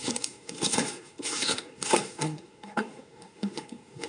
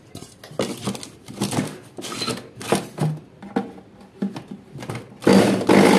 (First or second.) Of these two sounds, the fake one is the first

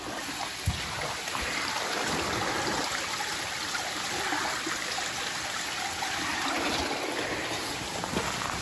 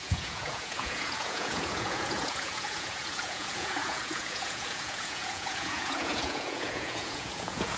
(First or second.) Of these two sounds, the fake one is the second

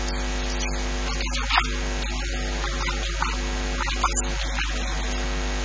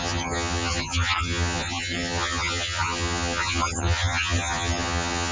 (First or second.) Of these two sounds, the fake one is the second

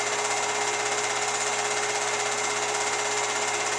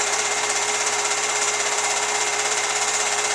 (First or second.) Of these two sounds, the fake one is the second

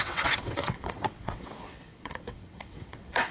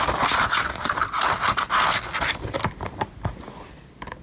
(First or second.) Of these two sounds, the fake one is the first